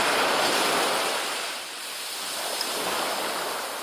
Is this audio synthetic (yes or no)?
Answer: no